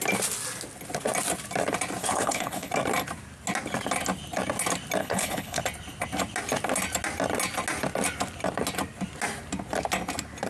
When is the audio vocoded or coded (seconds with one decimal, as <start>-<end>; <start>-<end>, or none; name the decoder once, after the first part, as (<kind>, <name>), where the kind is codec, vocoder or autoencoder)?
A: 2.0-2.7 (codec, HILCodec); 5.0-5.6